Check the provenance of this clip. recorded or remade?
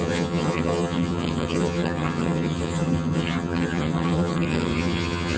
remade